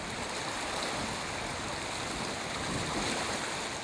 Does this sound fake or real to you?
real